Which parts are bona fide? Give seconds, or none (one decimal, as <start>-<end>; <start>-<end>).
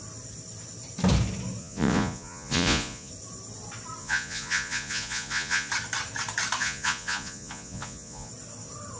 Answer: 0.0-1.6; 3.1-4.0; 5.7-6.6; 8.3-9.0